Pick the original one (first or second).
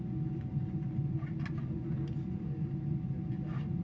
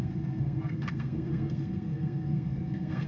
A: first